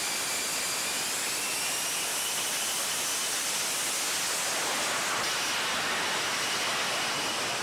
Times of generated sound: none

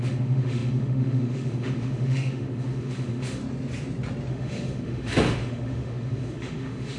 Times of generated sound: 0.0-3.4 (autoencoder, DAC-VAE); 4.3-7.0

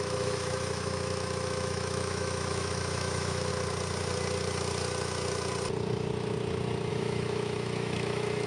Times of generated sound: 0.0-3.5 (autoencoder, DAC-VAE); 6.9-8.5